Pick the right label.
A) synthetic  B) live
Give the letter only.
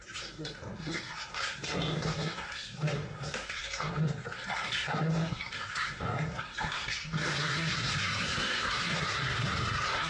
A